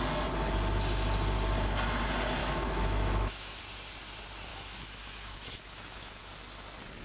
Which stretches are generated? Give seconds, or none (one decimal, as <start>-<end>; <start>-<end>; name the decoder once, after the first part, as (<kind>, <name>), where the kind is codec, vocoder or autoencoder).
2.4-3.6 (autoencoder, DAC-VAE); 4.5-6.2